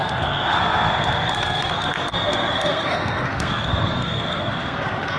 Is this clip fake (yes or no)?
yes